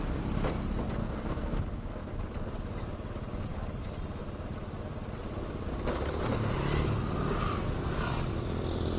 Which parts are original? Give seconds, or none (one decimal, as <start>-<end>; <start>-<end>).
0.0-1.0; 1.6-9.0